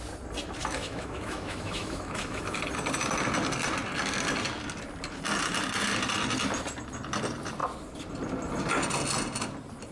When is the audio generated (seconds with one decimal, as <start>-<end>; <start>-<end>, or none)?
0.6-2.6